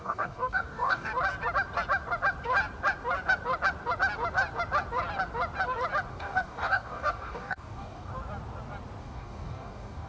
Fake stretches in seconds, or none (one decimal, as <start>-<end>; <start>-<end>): 0.0-1.1; 6.1-8.1; 9.0-10.1